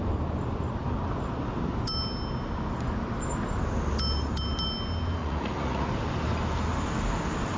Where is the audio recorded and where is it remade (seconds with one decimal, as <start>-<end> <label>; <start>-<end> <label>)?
0.0-5.2 recorded; 5.2-5.9 remade; 5.9-7.6 recorded